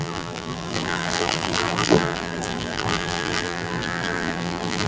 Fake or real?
fake